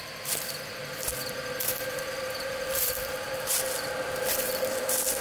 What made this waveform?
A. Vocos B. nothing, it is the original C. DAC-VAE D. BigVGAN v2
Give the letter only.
B